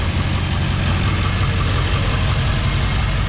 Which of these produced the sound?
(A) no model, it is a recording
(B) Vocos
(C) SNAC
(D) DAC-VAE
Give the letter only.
A